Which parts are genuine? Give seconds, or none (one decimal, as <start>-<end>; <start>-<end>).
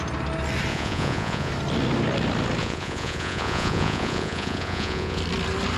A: 0.0-0.7; 1.5-2.6; 5.2-5.8